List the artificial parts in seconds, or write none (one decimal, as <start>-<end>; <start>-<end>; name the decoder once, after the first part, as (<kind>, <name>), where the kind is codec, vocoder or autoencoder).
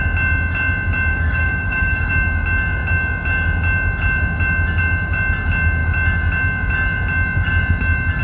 1.1-2.1 (codec, DAC)